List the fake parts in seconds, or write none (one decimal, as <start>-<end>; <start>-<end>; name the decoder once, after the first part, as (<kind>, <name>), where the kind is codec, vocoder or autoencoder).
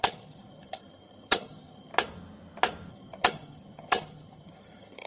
0.0-1.9 (vocoder, HiFi-GAN); 2.9-5.1